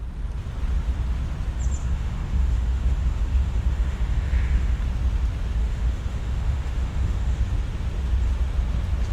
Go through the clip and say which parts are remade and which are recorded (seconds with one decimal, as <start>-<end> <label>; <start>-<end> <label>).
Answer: 0.0-1.8 recorded; 1.8-4.8 remade; 4.8-5.6 recorded; 5.6-7.4 remade; 7.4-9.1 recorded